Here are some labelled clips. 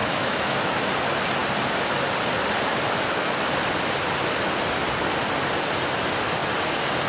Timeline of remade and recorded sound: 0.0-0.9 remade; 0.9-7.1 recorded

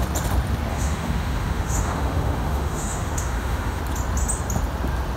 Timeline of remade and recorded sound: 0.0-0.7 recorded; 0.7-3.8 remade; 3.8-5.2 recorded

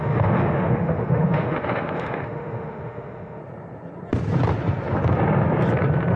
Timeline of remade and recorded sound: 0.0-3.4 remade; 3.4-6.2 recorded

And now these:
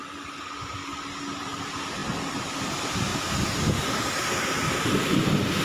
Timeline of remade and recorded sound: 0.0-5.6 recorded

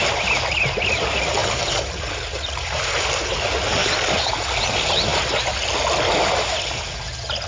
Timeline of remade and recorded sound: 0.0-7.5 recorded

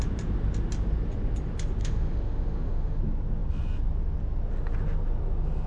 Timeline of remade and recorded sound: 0.0-1.8 recorded; 1.8-3.0 remade; 3.0-5.7 recorded